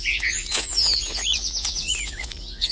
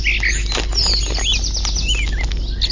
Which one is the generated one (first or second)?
first